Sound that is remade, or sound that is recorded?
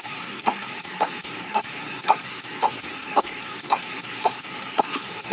remade